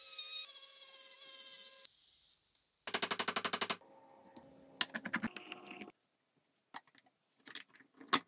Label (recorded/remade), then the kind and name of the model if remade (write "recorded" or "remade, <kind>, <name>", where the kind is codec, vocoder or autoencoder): recorded